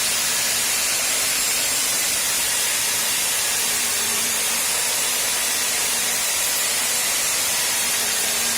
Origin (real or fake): fake